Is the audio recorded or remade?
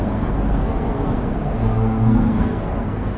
remade